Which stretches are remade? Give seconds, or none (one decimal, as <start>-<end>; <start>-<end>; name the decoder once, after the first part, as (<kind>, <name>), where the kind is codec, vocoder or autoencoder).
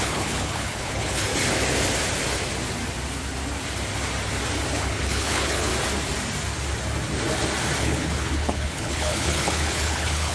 0.0-1.3 (codec, HILCodec); 4.7-5.7; 7.8-10.3